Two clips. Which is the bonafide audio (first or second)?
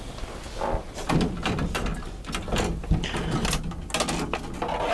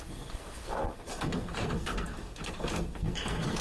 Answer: first